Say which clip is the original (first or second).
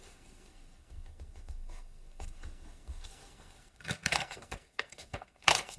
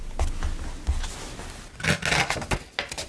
second